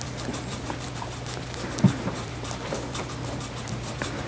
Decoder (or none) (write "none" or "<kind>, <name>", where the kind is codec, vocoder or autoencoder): vocoder, BigVGAN v2